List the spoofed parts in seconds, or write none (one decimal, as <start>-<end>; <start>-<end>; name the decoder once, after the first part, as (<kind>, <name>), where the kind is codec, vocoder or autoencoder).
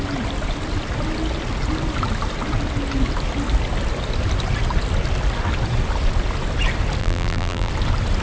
7.0-7.7 (vocoder, BigVGAN v2)